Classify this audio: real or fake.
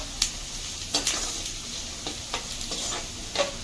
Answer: real